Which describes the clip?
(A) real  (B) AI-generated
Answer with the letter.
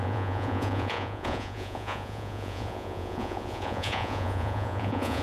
B